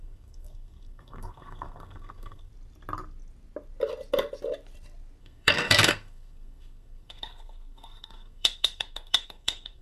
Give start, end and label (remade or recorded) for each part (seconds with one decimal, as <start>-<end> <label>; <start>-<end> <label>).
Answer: 0.0-2.5 remade; 2.5-5.2 recorded; 5.2-9.8 remade